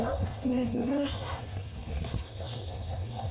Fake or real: fake